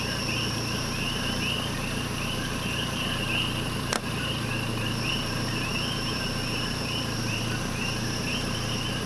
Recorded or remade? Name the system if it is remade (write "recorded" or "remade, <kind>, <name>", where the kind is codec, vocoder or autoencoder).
remade, vocoder, BigVGAN v2